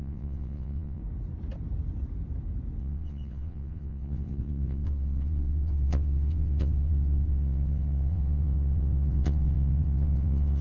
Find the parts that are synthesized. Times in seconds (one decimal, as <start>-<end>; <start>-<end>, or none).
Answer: 0.0-1.0; 2.8-10.6